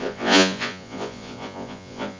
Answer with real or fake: fake